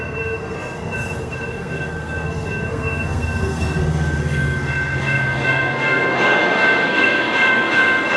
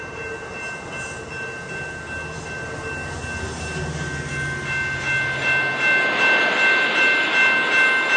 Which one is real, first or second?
second